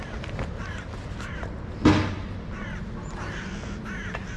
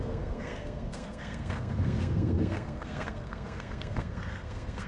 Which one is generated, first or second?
second